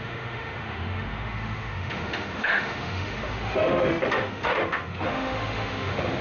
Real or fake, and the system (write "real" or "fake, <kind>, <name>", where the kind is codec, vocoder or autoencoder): fake, autoencoder, DAC-VAE